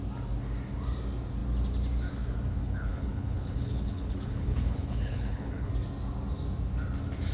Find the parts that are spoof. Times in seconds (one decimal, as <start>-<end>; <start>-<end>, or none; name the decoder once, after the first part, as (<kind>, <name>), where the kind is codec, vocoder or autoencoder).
2.6-5.7 (codec, HILCodec)